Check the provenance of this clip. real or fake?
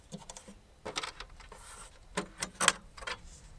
real